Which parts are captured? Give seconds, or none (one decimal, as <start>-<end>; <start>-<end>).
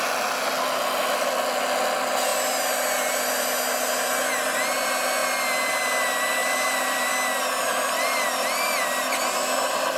0.0-6.4; 7.1-10.0